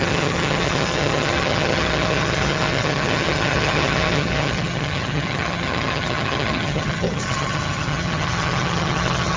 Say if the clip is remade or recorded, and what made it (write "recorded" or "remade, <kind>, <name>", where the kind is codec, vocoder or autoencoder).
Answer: remade, vocoder, HiFi-GAN